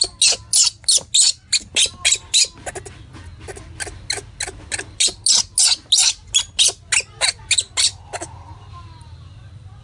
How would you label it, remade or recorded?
recorded